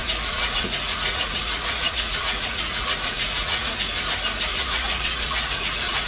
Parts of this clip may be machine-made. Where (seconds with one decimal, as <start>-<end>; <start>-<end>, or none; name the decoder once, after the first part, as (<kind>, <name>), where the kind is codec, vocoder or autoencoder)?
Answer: 0.0-3.7 (vocoder, Vocos); 4.5-6.1